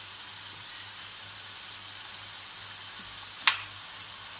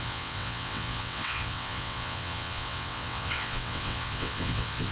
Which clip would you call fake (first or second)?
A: second